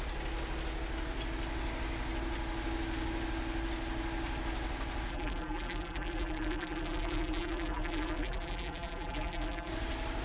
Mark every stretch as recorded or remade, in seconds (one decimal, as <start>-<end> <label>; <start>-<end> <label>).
0.0-5.1 recorded; 5.1-9.7 remade; 9.7-10.2 recorded